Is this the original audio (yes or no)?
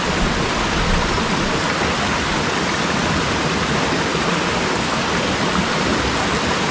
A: yes